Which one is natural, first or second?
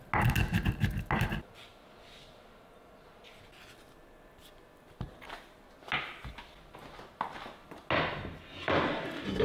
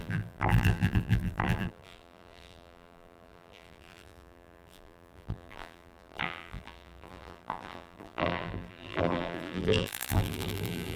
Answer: first